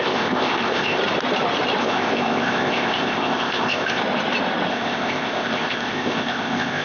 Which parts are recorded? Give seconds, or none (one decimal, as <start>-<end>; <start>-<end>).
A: 1.0-1.8; 4.0-4.7